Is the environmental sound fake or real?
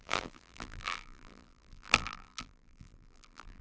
fake